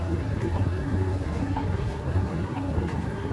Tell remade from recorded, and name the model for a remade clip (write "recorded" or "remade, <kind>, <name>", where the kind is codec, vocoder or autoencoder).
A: remade, codec, SNAC